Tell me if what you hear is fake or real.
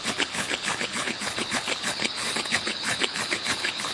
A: fake